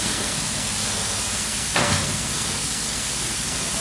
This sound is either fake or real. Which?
fake